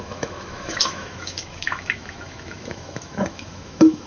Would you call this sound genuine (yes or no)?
no